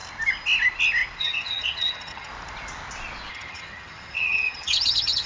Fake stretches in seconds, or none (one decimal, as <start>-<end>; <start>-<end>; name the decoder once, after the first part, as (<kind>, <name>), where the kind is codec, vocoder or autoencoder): 1.2-2.3 (vocoder, HiFi-GAN); 3.3-5.3